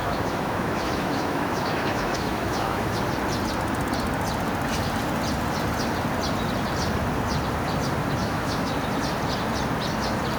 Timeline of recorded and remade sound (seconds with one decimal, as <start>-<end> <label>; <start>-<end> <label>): 0.0-3.0 remade; 3.0-8.2 recorded; 8.2-8.7 remade; 8.7-10.4 recorded